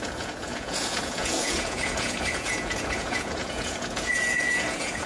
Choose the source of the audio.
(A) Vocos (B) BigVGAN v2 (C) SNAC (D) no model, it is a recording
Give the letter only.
A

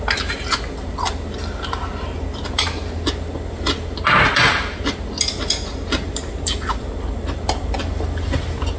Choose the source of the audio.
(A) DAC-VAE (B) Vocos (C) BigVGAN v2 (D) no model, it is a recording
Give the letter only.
D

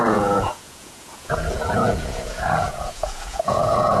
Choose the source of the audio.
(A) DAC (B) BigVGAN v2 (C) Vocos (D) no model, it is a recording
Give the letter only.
C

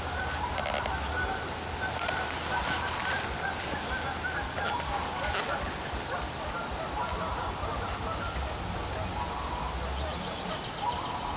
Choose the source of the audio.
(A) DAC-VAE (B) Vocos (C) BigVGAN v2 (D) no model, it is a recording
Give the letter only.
D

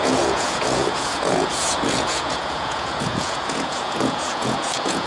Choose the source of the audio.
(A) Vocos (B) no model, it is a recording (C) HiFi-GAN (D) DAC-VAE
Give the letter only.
A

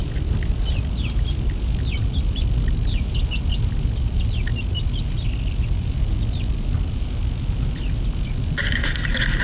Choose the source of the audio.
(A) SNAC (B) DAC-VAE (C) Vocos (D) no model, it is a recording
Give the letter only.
D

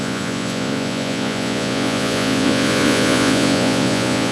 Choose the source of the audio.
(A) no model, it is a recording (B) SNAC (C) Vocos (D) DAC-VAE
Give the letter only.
C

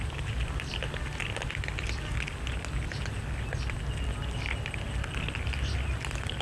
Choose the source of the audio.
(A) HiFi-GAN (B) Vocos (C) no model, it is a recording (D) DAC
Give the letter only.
C